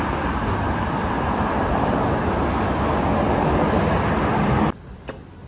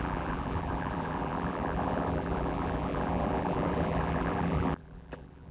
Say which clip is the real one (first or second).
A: first